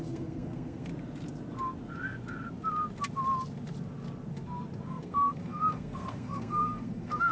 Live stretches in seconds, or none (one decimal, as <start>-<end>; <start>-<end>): 0.9-4.9